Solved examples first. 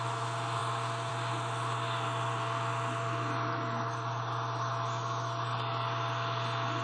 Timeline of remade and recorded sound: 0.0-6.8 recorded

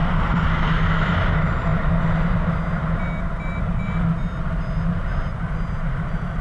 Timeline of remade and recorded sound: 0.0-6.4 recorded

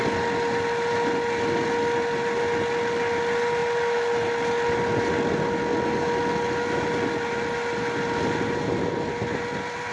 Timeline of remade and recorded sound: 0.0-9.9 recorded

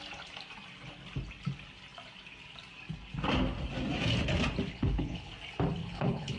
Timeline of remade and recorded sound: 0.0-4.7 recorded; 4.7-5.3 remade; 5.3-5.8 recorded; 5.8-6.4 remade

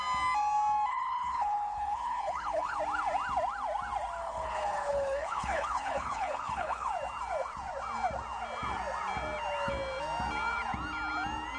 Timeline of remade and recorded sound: 0.0-0.9 recorded; 0.9-2.8 remade; 2.8-4.2 recorded; 4.2-6.9 remade; 6.9-11.6 recorded

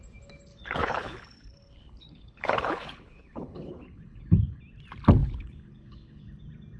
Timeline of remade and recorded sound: 0.0-0.5 recorded; 0.5-4.6 remade; 4.6-5.2 recorded; 5.2-6.2 remade; 6.2-6.8 recorded